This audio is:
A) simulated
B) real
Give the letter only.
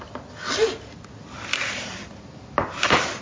B